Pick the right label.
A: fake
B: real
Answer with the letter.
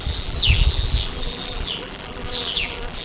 A